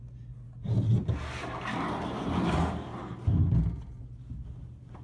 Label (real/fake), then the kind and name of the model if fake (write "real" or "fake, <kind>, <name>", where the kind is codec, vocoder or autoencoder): real